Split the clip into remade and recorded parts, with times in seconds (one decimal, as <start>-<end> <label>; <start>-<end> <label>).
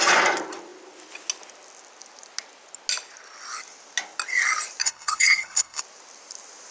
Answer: 0.0-4.8 recorded; 4.8-5.8 remade; 5.8-6.7 recorded